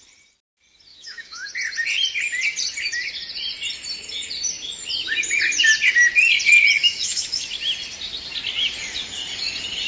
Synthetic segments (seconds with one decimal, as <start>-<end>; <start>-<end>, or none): 0.9-1.5; 6.8-7.4